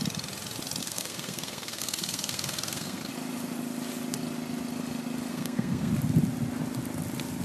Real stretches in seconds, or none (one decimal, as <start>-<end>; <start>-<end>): 0.0-0.8; 3.1-5.3; 5.9-7.4

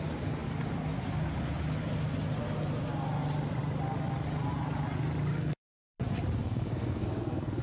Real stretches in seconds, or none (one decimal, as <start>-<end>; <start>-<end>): 0.0-5.3; 5.8-6.4

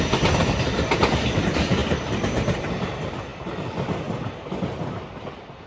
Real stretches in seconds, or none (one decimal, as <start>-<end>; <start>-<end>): 0.0-5.7

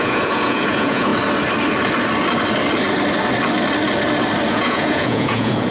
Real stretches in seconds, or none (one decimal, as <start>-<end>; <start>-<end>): 1.1-4.5

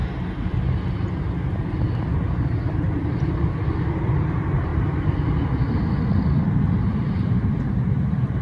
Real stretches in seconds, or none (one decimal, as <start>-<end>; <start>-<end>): 0.0-1.6; 4.7-6.7